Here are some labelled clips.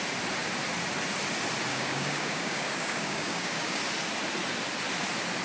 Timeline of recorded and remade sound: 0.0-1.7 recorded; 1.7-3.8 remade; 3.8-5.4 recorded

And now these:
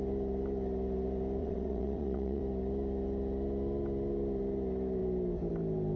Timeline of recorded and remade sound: 0.0-1.4 recorded; 1.4-2.4 remade; 2.4-6.0 recorded

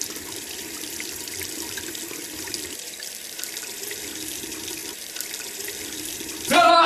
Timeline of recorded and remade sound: 0.0-6.9 remade

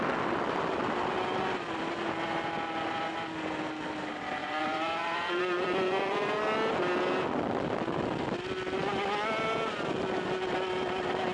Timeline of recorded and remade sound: 0.0-4.4 recorded; 4.4-6.4 remade; 6.4-11.3 recorded

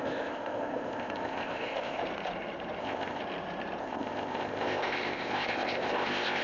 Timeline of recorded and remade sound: 0.0-2.0 remade; 2.0-2.8 recorded; 2.8-3.2 remade; 3.2-3.8 recorded; 3.8-6.4 remade